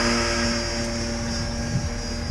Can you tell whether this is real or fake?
real